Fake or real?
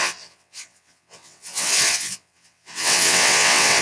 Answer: fake